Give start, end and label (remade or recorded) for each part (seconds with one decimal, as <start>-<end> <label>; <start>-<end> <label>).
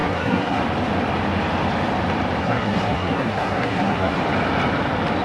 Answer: 0.0-0.6 remade; 0.6-2.4 recorded; 2.4-4.2 remade; 4.2-5.2 recorded